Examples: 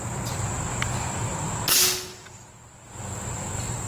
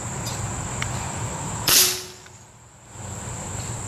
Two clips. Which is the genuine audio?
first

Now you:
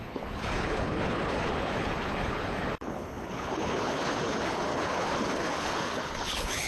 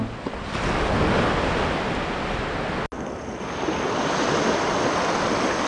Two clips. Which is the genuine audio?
second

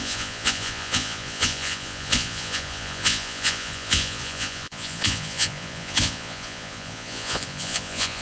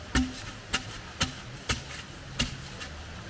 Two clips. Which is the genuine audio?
second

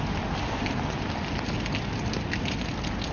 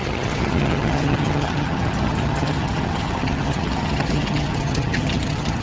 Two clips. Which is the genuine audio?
first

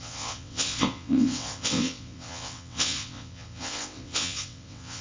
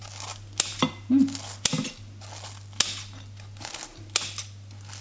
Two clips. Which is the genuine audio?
second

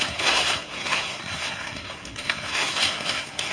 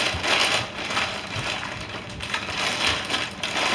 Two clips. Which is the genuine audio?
second